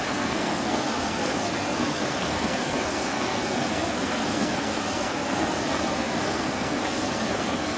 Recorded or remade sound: remade